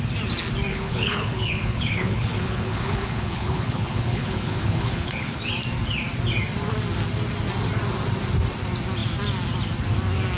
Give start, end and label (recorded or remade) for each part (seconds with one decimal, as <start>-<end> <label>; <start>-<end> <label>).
0.0-0.7 recorded; 0.7-5.4 remade; 5.4-10.4 recorded